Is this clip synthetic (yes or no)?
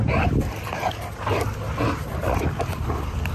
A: yes